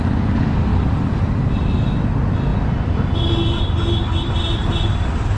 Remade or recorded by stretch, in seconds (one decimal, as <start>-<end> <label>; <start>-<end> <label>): 0.0-0.7 recorded; 0.7-1.3 remade; 1.3-2.5 recorded; 2.5-3.3 remade; 3.3-4.6 recorded; 4.6-5.4 remade